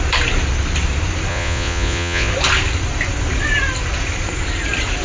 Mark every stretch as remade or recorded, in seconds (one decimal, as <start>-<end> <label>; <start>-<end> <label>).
0.0-1.3 recorded; 1.3-2.3 remade; 2.3-5.0 recorded